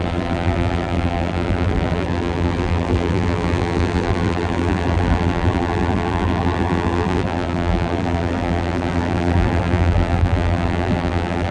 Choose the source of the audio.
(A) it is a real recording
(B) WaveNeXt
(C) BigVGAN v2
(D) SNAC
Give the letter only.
C